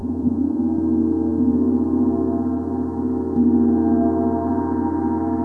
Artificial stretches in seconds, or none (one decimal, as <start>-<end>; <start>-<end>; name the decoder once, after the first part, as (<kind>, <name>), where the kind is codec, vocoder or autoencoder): 0.0-0.6 (vocoder, Vocos)

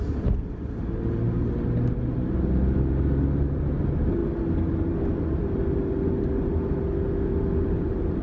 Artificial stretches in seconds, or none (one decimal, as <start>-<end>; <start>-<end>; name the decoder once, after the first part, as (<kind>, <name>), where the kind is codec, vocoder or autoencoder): none

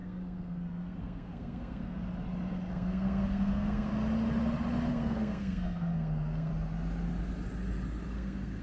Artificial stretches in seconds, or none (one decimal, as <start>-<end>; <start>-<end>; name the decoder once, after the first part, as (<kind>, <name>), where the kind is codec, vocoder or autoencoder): 0.0-2.0 (codec, SNAC); 2.7-3.9; 4.9-6.5; 8.1-8.6